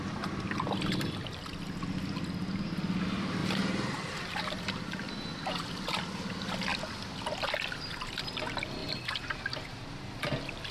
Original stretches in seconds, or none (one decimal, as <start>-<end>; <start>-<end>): 0.0-3.4; 4.7-8.8; 9.7-10.7